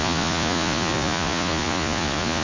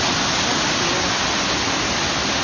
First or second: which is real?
second